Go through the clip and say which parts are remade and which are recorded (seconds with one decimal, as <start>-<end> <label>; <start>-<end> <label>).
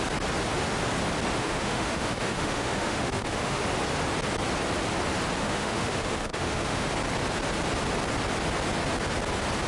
0.0-1.4 recorded; 1.4-3.6 remade; 3.6-5.4 recorded; 5.4-6.9 remade; 6.9-9.7 recorded